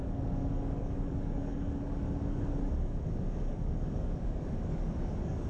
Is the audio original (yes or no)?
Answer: no